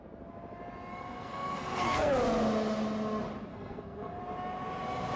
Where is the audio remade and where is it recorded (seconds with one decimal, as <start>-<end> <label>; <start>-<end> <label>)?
0.0-0.9 recorded; 0.9-2.1 remade; 2.1-3.5 recorded; 3.5-4.2 remade; 4.2-5.2 recorded